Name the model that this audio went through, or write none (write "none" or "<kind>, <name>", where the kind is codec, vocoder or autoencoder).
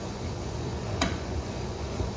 vocoder, Vocos